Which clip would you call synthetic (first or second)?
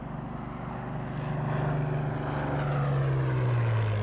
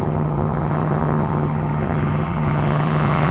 second